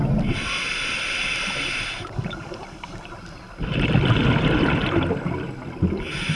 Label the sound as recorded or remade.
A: recorded